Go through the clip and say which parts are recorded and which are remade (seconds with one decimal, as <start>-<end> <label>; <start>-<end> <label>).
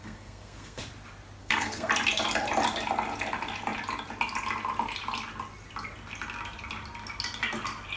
0.0-0.8 remade; 0.8-1.4 recorded; 1.4-1.9 remade; 1.9-8.0 recorded